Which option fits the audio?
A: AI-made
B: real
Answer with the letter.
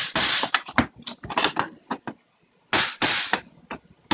B